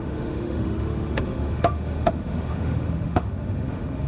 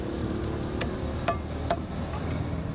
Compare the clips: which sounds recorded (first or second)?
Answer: second